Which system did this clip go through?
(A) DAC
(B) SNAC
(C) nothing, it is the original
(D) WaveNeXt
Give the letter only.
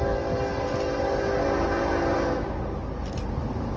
C